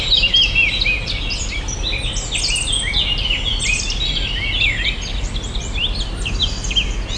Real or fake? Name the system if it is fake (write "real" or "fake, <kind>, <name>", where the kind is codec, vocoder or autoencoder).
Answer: real